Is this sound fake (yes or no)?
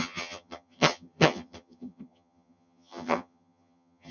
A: yes